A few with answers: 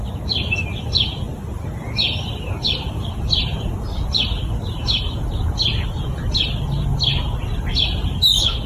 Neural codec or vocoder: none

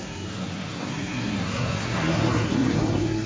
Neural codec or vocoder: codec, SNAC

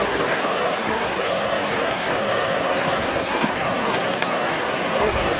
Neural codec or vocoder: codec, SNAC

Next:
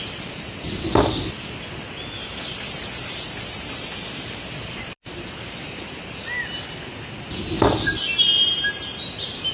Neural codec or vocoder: none